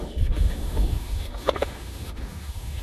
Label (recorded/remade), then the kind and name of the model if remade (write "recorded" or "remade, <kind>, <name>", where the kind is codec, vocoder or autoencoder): remade, autoencoder, DAC-VAE